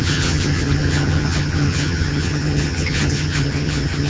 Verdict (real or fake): fake